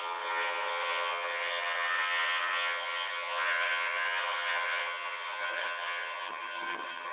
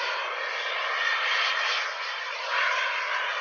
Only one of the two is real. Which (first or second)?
second